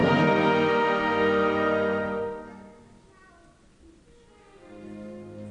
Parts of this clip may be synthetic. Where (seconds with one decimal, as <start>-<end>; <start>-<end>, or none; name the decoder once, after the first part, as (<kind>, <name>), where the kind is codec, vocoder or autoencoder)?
none